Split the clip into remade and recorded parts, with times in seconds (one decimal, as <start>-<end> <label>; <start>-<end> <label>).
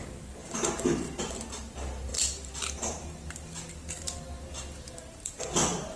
0.0-0.4 recorded; 0.4-1.2 remade; 1.2-2.1 recorded; 2.1-5.4 remade; 5.4-6.0 recorded